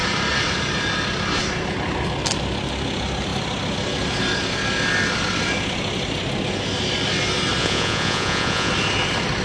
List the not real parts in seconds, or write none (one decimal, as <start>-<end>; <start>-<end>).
7.6-8.7